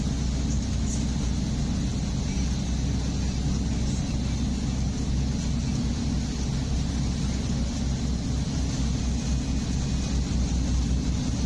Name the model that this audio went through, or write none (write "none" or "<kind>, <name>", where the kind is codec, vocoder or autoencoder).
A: none